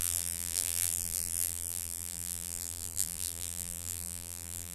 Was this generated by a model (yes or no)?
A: yes